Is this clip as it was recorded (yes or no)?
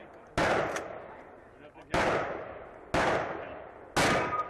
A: yes